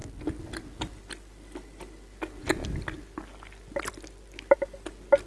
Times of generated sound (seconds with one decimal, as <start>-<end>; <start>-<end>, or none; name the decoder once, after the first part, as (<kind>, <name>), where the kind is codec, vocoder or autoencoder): none